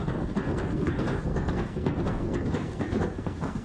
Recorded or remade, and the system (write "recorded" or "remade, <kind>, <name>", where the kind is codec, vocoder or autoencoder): remade, codec, SNAC